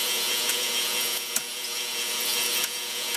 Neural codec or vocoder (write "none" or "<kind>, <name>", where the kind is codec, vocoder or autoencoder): vocoder, Vocos